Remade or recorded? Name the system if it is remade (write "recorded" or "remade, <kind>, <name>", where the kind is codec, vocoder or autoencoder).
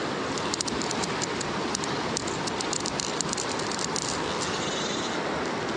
recorded